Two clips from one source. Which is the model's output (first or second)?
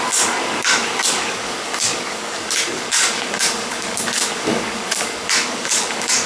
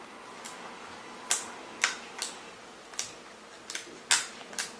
first